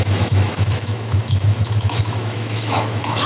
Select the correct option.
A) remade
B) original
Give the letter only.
A